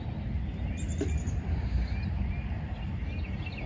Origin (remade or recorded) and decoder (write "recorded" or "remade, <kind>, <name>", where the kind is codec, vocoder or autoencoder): recorded